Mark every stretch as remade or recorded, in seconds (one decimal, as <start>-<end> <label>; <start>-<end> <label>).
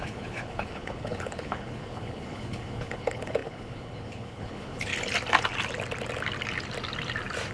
0.0-4.9 remade; 4.9-7.5 recorded